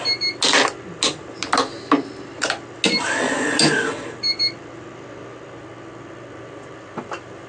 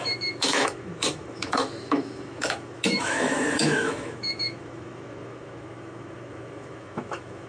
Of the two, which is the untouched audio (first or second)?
first